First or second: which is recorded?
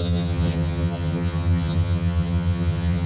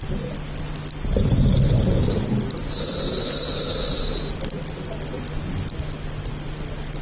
second